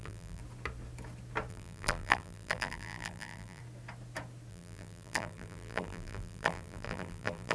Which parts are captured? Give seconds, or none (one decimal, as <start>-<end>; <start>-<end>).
0.4-1.5; 3.6-4.5